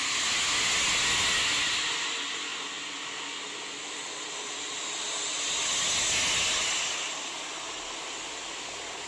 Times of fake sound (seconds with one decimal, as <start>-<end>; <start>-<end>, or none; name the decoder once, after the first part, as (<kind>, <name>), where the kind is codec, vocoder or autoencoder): none